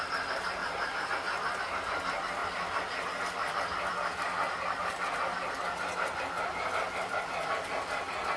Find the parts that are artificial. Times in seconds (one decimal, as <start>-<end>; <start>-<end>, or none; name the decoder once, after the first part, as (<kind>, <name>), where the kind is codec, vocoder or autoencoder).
0.6-1.6 (vocoder, BigVGAN v2)